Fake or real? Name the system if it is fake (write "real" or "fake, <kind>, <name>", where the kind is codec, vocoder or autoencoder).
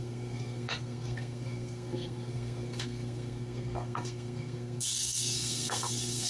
fake, codec, SNAC